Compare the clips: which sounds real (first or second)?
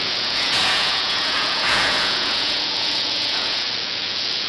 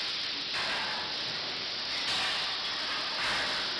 second